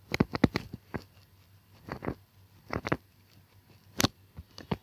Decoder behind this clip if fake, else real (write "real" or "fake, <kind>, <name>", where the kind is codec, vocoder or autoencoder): real